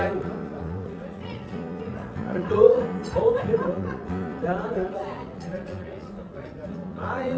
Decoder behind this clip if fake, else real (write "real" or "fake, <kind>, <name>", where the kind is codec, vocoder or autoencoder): fake, vocoder, Vocos